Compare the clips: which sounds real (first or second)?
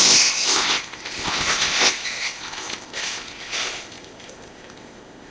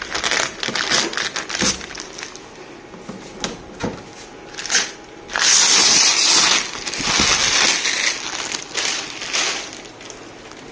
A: second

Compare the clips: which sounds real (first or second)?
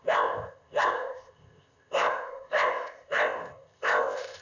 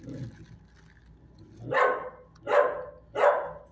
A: second